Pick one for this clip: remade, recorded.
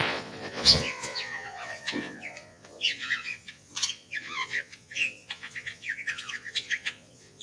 remade